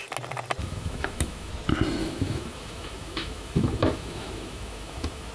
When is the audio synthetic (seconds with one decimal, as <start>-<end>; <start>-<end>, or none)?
0.6-1.5; 2.0-5.3